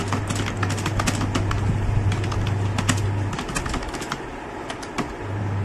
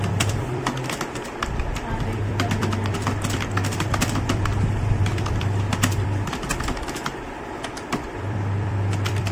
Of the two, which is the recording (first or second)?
first